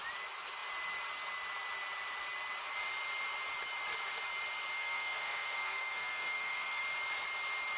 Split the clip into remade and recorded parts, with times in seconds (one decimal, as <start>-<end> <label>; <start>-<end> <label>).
0.0-4.8 recorded; 4.8-6.8 remade; 6.8-7.8 recorded